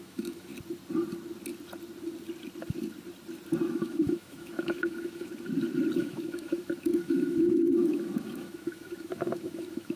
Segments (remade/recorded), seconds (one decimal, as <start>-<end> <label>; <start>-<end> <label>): 0.0-0.5 remade; 0.5-3.7 recorded; 3.7-5.3 remade; 5.3-6.0 recorded; 6.0-10.0 remade

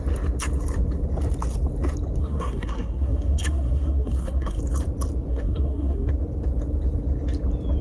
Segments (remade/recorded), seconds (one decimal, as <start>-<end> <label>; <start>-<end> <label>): 0.0-2.2 recorded; 2.2-4.6 remade; 4.6-5.3 recorded; 5.3-6.1 remade; 6.1-7.8 recorded

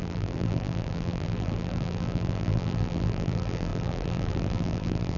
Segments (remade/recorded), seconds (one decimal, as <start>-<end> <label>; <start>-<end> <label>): 0.0-5.2 remade